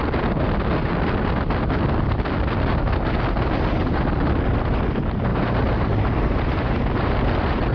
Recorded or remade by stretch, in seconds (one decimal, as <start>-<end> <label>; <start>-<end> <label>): 0.0-7.7 recorded